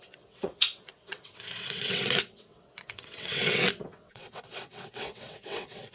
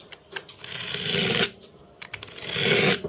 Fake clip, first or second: first